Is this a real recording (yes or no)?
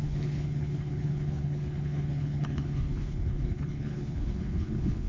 no